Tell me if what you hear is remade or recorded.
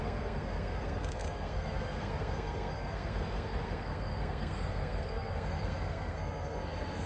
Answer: remade